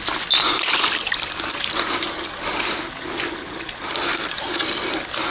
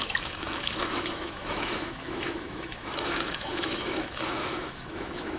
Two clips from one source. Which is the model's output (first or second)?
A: second